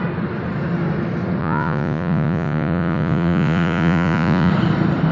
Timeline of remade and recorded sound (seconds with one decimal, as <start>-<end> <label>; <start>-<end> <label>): 0.0-1.4 recorded; 1.4-4.5 remade; 4.5-5.1 recorded